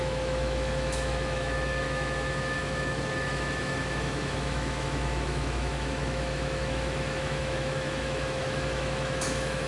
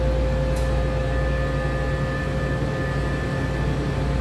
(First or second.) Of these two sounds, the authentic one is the second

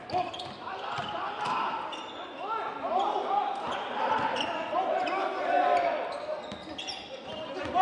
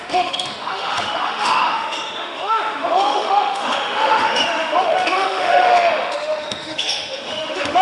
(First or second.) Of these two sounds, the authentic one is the first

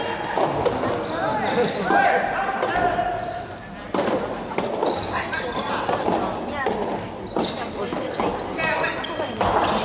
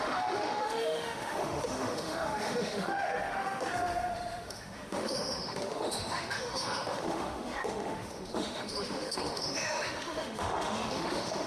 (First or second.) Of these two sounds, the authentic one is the first